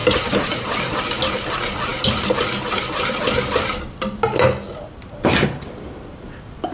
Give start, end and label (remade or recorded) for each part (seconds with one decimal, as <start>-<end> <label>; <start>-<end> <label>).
0.0-0.9 remade; 0.9-6.7 recorded